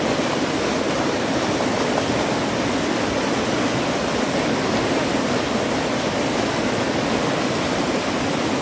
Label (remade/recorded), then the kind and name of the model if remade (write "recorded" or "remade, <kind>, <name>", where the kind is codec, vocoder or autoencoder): recorded